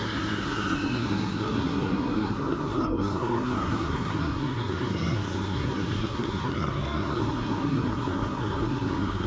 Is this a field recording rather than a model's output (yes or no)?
no